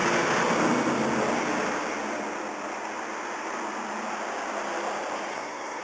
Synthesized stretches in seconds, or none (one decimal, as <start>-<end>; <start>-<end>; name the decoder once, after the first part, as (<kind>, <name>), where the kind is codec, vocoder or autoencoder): 5.3-5.8 (codec, SNAC)